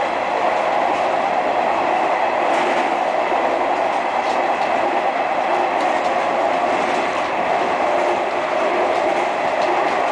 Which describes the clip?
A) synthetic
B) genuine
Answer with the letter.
B